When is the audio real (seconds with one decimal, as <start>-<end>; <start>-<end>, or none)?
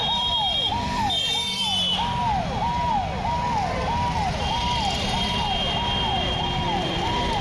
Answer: 1.9-4.5